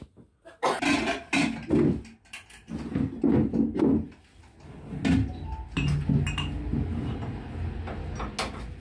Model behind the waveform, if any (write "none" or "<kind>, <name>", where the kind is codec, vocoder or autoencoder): none